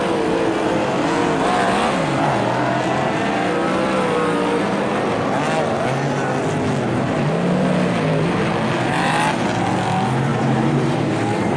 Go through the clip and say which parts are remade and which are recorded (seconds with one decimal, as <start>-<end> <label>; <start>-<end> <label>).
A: 0.0-10.3 recorded; 10.3-11.6 remade